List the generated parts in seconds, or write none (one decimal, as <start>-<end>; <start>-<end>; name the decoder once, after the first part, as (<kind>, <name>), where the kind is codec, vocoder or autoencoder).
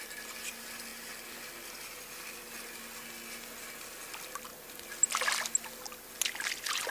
none